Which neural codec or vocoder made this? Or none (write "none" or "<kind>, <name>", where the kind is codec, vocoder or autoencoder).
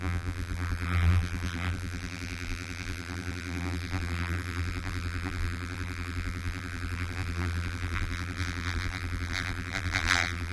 vocoder, BigVGAN v2